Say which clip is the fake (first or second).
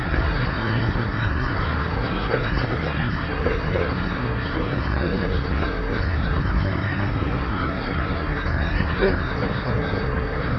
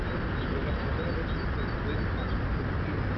first